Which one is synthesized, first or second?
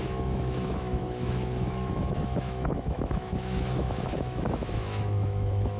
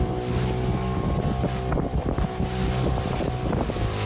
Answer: first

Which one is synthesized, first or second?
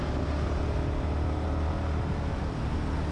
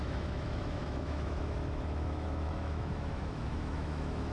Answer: second